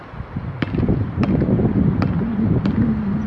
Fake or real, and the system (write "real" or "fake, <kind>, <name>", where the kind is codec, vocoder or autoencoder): real